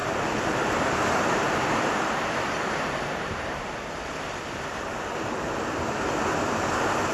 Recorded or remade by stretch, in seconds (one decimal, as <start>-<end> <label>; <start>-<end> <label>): 0.0-3.6 remade; 3.6-7.1 recorded